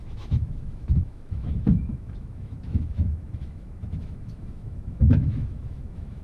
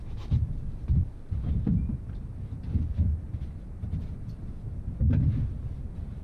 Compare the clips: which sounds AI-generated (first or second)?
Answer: first